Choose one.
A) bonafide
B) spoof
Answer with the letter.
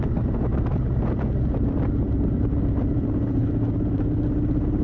B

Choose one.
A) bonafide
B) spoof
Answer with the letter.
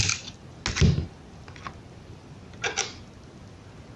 A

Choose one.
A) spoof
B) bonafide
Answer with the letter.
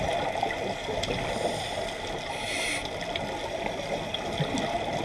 B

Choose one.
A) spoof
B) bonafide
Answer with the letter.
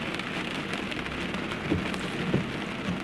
B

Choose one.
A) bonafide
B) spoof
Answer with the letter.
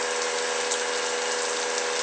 A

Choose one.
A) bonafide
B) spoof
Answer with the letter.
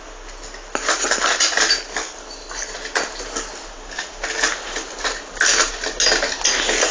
A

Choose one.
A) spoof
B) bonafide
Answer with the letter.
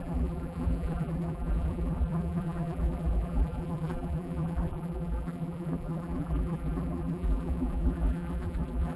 A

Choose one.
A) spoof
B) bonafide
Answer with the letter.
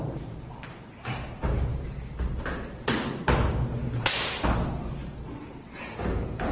A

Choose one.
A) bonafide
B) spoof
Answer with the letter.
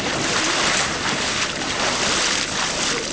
A